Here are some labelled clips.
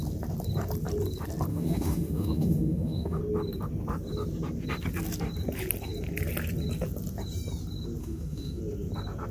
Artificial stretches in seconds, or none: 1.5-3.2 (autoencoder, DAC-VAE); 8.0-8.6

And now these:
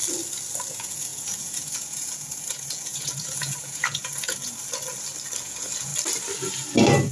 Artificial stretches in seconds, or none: 0.7-4.6 (vocoder, Vocos); 5.4-5.9

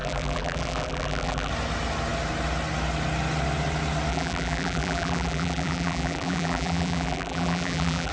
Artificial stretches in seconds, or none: 0.0-1.5 (vocoder, BigVGAN v2); 4.1-8.1